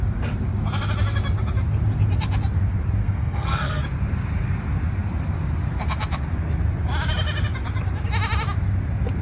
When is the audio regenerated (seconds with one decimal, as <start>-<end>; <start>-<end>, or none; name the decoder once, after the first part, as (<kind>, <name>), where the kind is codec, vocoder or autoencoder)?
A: 3.0-3.8 (codec, SNAC)